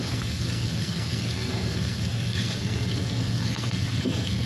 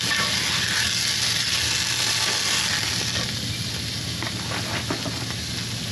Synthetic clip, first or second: first